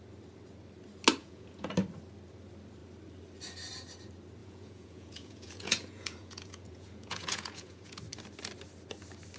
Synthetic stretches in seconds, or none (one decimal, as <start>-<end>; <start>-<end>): 1.2-1.7; 4.4-8.0